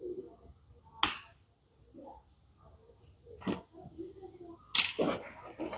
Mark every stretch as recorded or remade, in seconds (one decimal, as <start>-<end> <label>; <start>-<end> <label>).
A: 0.0-5.8 recorded